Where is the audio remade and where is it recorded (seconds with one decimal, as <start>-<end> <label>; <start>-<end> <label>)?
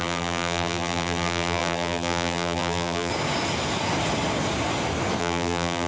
0.0-3.1 remade; 3.1-5.2 recorded; 5.2-5.9 remade